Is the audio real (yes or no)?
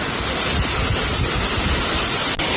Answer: yes